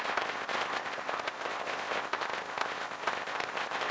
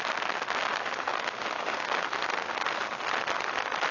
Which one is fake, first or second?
first